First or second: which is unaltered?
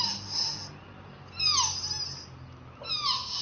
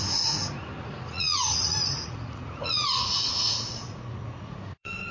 first